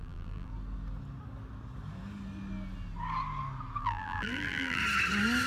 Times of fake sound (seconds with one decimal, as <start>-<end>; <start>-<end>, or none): 0.0-0.5; 3.8-4.8